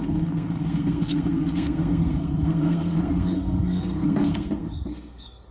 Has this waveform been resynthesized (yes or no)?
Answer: yes